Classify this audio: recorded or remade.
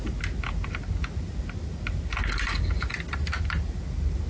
recorded